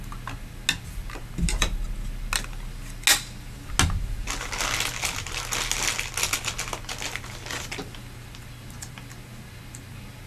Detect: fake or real real